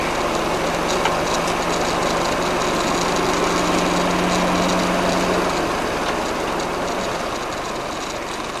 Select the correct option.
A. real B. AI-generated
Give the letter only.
A